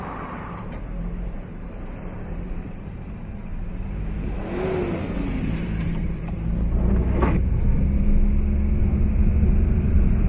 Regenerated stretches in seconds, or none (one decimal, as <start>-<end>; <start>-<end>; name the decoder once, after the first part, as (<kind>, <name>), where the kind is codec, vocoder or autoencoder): 0.0-3.5 (vocoder, BigVGAN v2); 5.3-7.0; 8.8-10.3